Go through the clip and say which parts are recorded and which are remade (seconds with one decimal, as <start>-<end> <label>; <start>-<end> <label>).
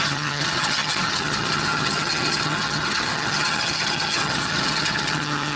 0.0-5.6 remade